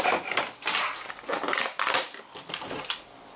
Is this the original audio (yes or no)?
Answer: yes